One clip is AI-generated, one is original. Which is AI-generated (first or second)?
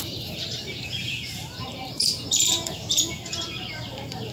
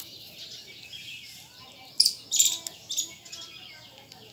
first